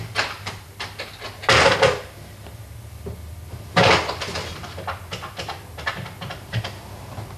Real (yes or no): yes